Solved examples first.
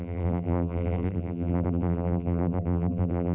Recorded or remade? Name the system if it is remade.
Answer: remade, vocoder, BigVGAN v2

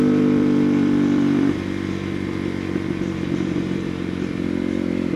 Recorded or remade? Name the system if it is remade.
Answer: remade, vocoder, BigVGAN v2